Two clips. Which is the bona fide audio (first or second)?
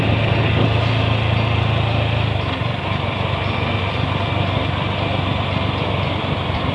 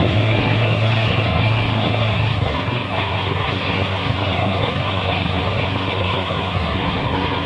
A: first